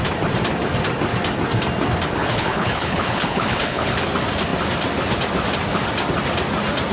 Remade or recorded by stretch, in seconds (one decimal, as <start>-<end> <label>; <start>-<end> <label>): 0.0-2.2 recorded; 2.2-4.1 remade; 4.1-6.9 recorded